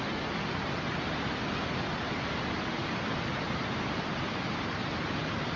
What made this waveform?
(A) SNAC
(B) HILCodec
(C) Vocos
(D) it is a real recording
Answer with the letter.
D